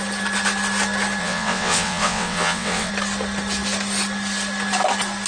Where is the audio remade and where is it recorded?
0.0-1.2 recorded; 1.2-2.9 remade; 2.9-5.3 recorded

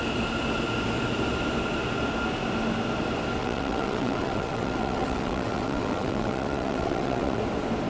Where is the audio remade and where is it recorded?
0.0-3.4 recorded; 3.4-7.4 remade; 7.4-7.9 recorded